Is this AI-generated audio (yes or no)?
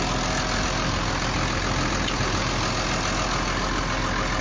no